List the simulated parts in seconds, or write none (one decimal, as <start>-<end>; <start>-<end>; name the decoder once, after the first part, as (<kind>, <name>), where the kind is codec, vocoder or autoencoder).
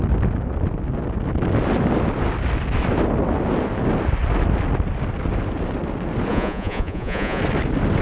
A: 6.3-7.4 (vocoder, Vocos)